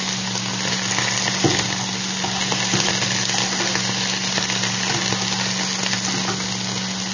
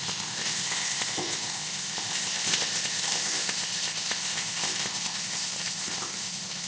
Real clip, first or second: first